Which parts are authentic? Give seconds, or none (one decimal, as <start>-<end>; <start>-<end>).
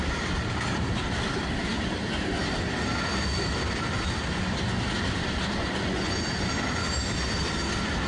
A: 0.0-5.6; 6.3-8.1